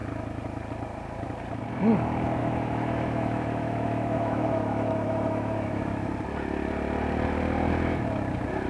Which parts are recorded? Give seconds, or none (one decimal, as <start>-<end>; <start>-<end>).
0.0-2.4; 6.1-8.7